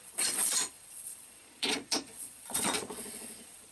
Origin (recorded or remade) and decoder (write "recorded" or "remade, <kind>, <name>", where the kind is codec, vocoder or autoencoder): remade, vocoder, Vocos